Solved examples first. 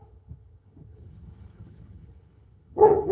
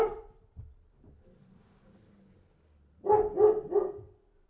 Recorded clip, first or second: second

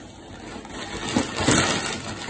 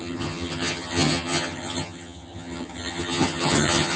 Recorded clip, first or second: first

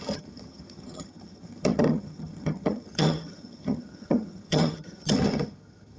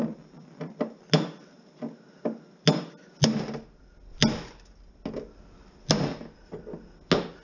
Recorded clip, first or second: second